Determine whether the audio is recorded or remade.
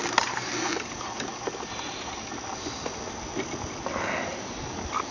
recorded